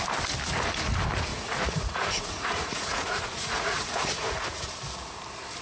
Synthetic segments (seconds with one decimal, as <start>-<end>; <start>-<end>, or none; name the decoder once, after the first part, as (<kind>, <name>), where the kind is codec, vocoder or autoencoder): 1.3-4.7 (vocoder, Vocos)